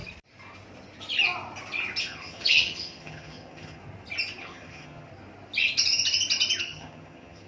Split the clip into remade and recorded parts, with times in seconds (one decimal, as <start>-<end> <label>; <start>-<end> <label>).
0.0-2.0 recorded; 2.0-3.8 remade; 3.8-4.4 recorded; 4.4-5.1 remade; 5.1-6.6 recorded; 6.6-7.5 remade